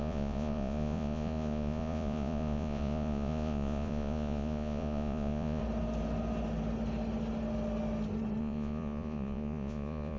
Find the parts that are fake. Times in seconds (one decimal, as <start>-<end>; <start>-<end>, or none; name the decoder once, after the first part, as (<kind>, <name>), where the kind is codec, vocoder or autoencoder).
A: 0.0-5.6 (vocoder, Vocos); 8.4-10.2